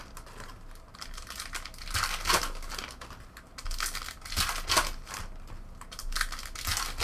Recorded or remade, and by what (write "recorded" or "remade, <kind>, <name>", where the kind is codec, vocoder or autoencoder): recorded